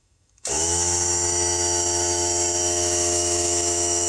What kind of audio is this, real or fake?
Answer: fake